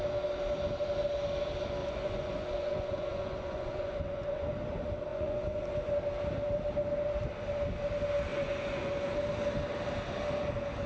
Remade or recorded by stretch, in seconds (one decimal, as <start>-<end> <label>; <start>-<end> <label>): 0.0-1.8 recorded; 1.8-4.5 remade; 4.5-5.1 recorded; 5.1-5.9 remade; 5.9-8.3 recorded; 8.3-8.9 remade; 8.9-10.9 recorded